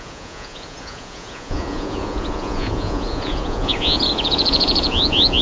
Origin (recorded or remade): remade